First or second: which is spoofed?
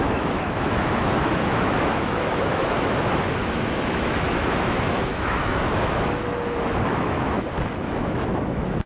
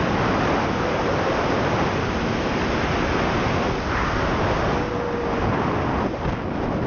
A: first